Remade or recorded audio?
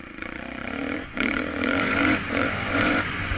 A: remade